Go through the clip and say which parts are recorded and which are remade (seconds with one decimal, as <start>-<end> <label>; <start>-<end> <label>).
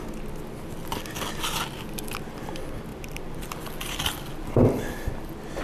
0.0-2.9 recorded; 2.9-5.6 remade